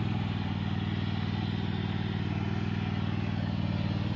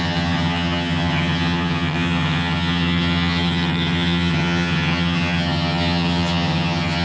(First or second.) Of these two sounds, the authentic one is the first